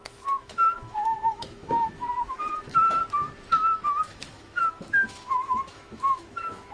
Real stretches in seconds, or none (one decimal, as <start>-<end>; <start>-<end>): 3.0-3.9

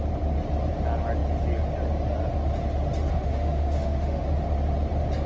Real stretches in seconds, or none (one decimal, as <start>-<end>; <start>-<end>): 0.0-3.1; 4.2-5.3

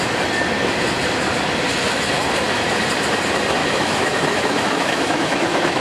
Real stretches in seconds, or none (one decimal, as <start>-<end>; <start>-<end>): 0.0-3.6

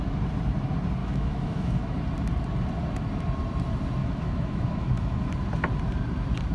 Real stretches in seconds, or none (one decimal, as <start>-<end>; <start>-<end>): 0.0-1.0; 2.0-4.0; 5.3-6.5

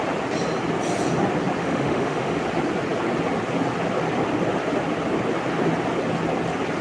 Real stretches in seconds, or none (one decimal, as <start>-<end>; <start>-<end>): 0.0-1.6; 2.4-6.8

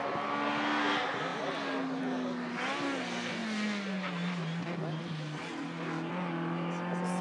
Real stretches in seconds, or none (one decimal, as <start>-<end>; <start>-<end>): 0.0-7.2

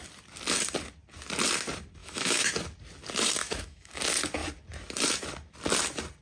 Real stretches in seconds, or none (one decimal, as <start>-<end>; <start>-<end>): 0.0-2.0; 2.5-3.4; 4.0-6.2